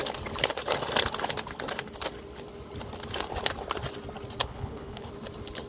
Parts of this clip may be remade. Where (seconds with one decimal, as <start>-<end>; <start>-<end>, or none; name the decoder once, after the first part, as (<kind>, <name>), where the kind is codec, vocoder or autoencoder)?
4.4-5.1 (codec, HILCodec)